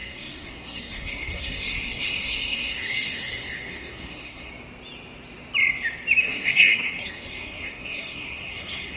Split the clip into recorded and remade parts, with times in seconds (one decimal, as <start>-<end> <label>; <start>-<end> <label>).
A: 0.0-4.5 remade; 4.5-6.2 recorded; 6.2-9.0 remade